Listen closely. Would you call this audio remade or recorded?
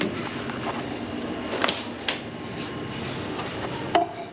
recorded